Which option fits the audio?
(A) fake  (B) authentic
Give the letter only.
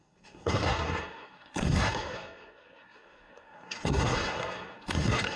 A